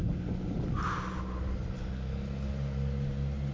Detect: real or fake real